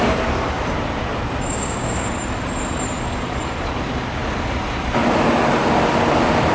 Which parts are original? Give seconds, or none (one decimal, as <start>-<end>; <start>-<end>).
0.0-1.5; 2.1-6.5